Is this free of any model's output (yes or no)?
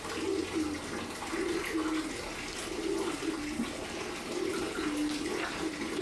yes